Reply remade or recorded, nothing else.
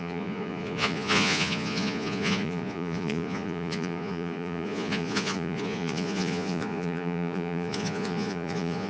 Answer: remade